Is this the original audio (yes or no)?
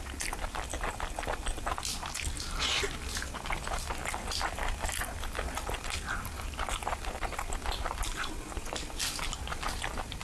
yes